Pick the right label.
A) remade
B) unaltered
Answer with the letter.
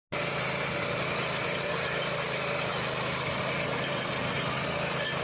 B